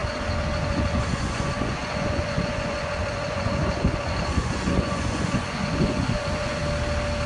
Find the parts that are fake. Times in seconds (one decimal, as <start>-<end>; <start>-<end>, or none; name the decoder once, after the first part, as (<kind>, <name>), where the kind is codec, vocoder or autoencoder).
0.0-6.6 (vocoder, Vocos)